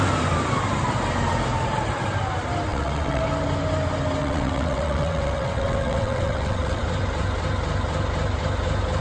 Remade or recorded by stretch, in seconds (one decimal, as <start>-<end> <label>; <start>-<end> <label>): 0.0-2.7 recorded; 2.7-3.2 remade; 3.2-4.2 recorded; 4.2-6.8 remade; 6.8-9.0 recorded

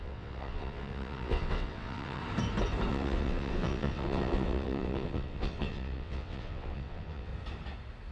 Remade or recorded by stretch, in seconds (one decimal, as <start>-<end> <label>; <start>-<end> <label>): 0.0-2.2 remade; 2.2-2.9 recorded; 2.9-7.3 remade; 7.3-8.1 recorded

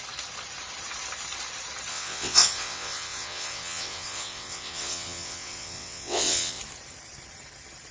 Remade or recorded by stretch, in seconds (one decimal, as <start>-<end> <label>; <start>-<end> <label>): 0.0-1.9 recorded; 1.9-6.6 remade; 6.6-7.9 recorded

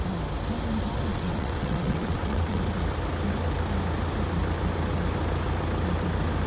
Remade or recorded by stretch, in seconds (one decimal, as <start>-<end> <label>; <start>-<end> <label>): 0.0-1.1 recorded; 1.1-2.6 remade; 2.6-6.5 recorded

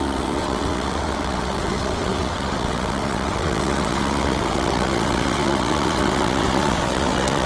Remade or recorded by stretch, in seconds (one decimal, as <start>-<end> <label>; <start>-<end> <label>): 0.0-7.5 remade

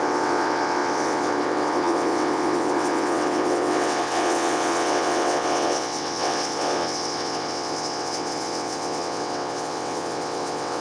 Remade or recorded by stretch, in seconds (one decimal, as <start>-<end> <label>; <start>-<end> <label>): 0.0-10.8 remade

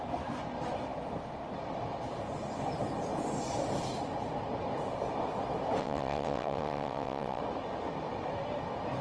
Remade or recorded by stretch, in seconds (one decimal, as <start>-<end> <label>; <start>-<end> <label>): 0.0-5.8 recorded; 5.8-7.4 remade; 7.4-9.0 recorded

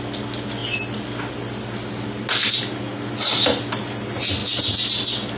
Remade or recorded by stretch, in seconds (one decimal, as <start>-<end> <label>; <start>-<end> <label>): 0.0-5.4 recorded